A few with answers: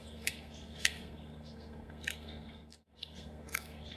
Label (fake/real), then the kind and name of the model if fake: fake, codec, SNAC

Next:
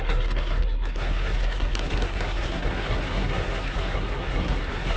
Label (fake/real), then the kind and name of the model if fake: fake, codec, SNAC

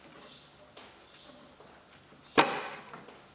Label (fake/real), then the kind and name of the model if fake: real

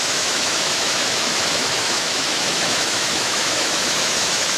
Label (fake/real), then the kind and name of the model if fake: fake, autoencoder, DAC-VAE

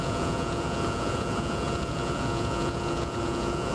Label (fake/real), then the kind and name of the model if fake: fake, vocoder, Vocos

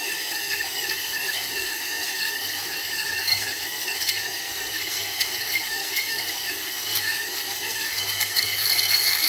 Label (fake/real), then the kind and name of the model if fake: fake, codec, SNAC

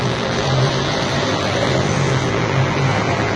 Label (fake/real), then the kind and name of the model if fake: fake, vocoder, BigVGAN v2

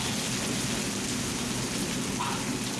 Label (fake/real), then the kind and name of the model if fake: real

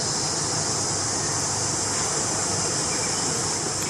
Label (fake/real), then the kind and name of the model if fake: real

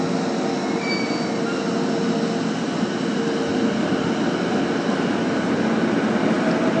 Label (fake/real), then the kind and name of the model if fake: real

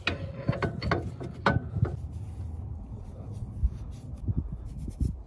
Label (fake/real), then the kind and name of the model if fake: real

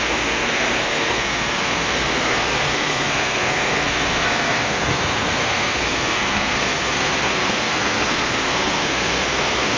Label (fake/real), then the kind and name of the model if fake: fake, codec, SNAC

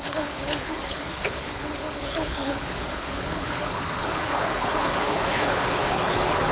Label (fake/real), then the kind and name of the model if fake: fake, codec, HILCodec